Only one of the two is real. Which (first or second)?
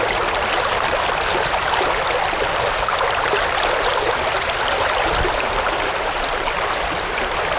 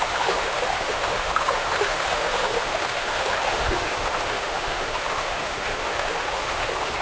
first